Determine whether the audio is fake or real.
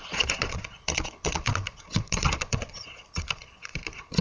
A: fake